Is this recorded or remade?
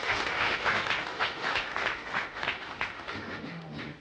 remade